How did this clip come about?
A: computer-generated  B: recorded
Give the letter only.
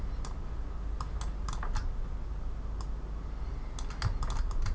B